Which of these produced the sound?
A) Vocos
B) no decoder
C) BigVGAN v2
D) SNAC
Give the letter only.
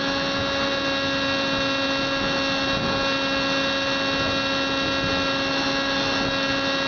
B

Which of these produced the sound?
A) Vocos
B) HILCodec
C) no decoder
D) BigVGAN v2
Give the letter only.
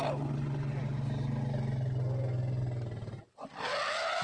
C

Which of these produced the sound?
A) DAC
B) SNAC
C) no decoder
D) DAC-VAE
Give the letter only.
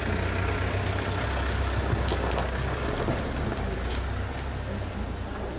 C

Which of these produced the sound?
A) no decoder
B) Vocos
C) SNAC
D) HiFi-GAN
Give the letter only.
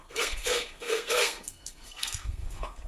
C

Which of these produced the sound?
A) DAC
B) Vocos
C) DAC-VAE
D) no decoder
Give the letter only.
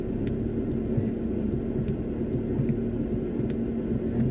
D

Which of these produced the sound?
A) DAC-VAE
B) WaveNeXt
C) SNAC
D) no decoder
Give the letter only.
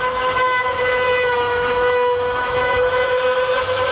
A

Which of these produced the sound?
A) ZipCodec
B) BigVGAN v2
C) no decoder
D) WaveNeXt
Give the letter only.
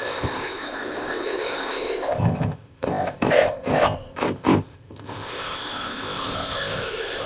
A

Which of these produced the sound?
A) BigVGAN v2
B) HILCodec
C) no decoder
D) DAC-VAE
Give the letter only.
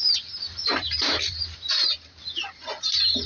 A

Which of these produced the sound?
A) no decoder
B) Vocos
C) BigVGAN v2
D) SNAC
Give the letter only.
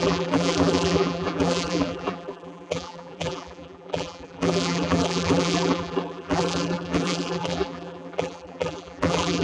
C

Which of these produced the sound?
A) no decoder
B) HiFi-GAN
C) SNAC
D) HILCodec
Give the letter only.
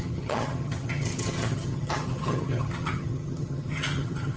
B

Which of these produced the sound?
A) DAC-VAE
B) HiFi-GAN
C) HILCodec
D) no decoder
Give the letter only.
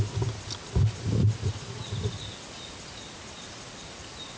D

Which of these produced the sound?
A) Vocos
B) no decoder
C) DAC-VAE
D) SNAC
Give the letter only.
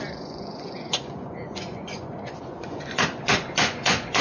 A